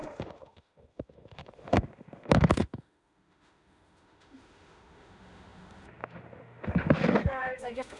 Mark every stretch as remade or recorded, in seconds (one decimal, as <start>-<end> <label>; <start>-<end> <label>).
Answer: 0.0-8.0 remade